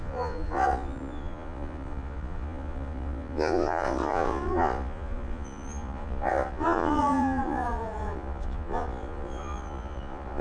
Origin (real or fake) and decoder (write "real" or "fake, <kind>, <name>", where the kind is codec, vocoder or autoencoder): fake, vocoder, Vocos